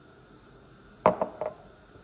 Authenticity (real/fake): real